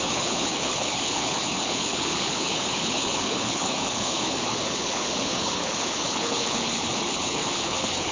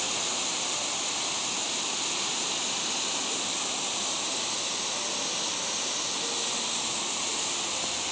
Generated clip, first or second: first